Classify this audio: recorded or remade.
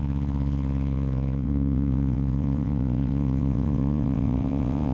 remade